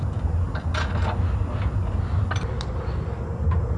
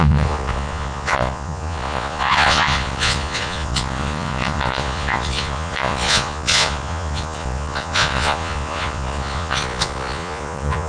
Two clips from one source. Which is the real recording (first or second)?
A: first